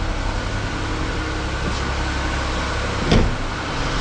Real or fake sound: real